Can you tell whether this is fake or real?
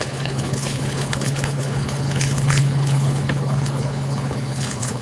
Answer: fake